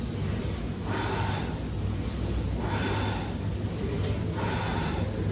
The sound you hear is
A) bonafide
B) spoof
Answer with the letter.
A